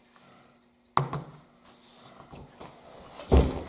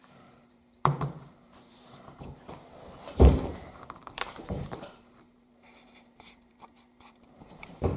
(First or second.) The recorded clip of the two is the first